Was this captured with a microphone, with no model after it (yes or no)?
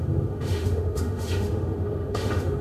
no